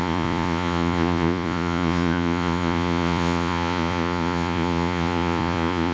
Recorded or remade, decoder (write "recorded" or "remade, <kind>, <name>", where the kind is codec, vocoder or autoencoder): remade, vocoder, Vocos